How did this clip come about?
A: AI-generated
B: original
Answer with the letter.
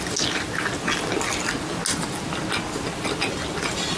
B